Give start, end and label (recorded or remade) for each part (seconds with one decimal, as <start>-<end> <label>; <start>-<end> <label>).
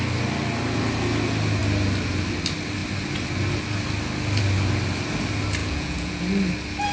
0.0-5.6 recorded; 5.6-6.2 remade; 6.2-6.9 recorded